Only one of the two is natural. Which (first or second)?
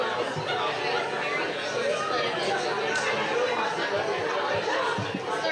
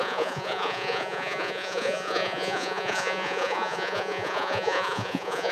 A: first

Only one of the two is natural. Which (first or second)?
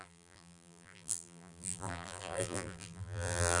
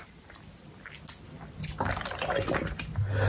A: second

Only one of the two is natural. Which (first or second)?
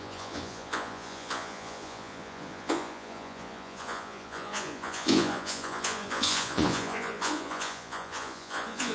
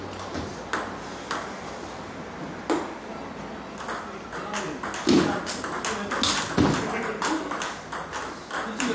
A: second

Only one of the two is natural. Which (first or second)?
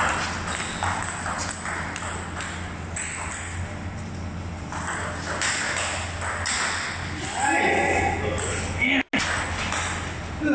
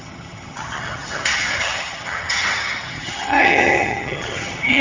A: first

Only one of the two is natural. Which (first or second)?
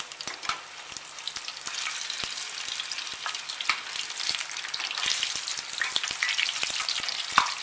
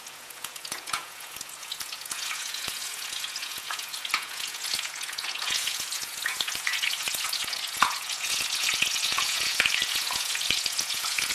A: first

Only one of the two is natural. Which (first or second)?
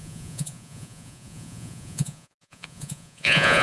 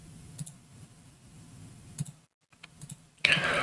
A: second